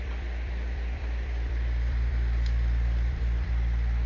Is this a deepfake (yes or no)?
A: yes